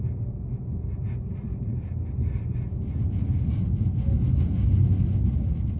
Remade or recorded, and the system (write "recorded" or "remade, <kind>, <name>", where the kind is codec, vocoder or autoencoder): recorded